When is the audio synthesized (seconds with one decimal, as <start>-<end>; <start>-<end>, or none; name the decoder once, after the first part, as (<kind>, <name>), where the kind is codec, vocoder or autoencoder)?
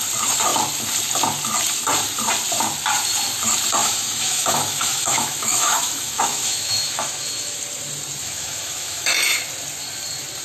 3.8-7.6 (autoencoder, DAC-VAE); 8.2-9.1